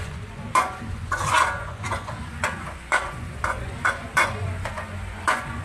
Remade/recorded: remade